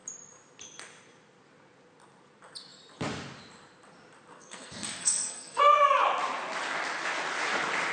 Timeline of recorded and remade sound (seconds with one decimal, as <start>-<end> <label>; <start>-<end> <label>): 0.0-4.3 recorded; 4.3-5.6 remade; 5.6-7.9 recorded